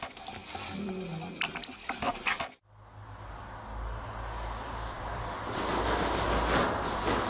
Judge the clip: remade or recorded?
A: recorded